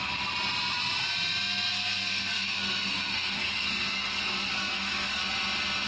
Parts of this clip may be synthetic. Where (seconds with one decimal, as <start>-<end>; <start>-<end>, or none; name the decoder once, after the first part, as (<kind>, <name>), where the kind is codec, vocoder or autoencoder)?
1.7-5.2 (codec, SNAC)